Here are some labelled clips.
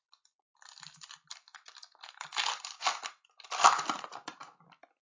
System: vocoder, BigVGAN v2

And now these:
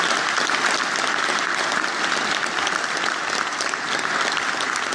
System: none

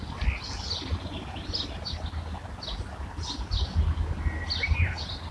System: none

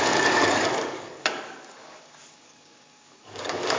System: codec, DAC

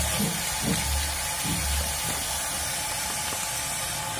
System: none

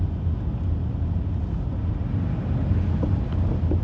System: none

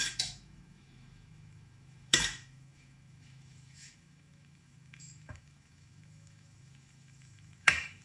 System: autoencoder, DAC-VAE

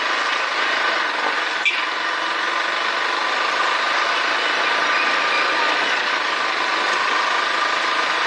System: none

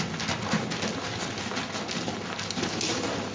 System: none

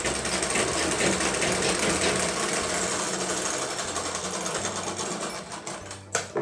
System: none